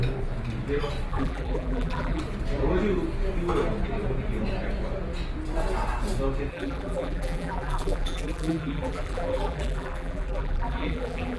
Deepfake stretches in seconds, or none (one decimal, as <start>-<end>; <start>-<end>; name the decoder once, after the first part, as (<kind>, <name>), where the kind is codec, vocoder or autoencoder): 1.1-2.2 (vocoder, BigVGAN v2); 6.5-11.4